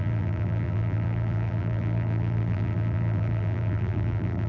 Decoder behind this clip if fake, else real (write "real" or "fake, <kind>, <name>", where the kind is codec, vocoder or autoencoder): fake, vocoder, BigVGAN v2